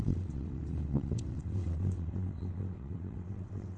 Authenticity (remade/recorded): remade